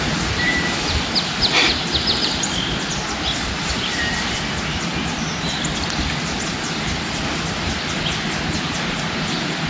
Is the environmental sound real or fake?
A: real